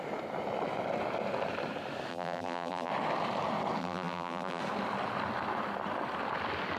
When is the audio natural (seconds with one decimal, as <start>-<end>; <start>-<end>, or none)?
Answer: 0.0-2.1; 2.9-3.8; 4.6-6.8